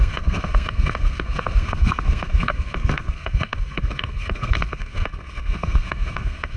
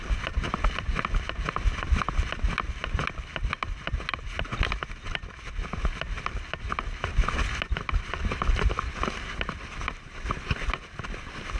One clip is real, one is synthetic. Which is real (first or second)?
second